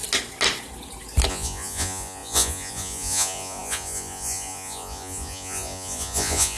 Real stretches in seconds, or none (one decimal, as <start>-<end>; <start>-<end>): 0.0-1.3

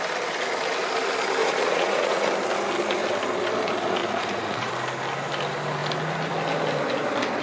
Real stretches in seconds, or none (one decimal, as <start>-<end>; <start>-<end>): 0.0-1.4; 2.3-4.0; 4.7-7.4